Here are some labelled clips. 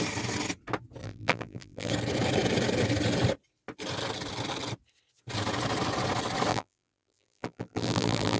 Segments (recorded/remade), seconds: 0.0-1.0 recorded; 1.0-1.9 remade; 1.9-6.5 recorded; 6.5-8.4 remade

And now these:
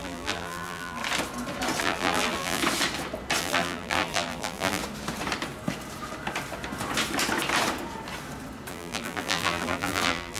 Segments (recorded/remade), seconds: 0.0-1.0 remade; 1.0-1.8 recorded; 1.8-2.6 remade; 2.6-3.4 recorded; 3.4-4.8 remade; 4.8-8.7 recorded; 8.7-10.4 remade

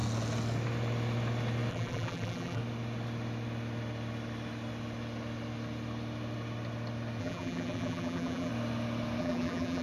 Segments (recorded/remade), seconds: 0.0-1.7 recorded; 1.7-2.6 remade; 2.6-7.2 recorded; 7.2-8.5 remade; 8.5-9.2 recorded; 9.2-9.8 remade

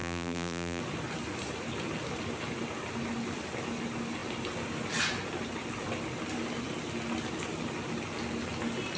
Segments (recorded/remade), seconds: 0.0-0.8 remade; 0.8-9.0 recorded

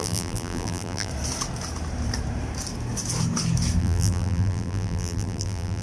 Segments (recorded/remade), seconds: 0.0-1.1 remade; 1.1-3.8 recorded; 3.8-5.8 remade

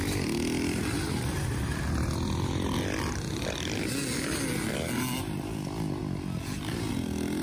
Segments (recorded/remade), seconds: 0.0-7.4 recorded